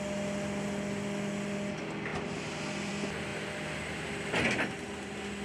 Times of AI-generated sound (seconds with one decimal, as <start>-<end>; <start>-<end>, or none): none